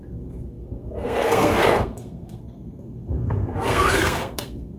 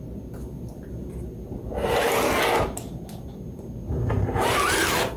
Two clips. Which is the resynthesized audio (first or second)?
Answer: first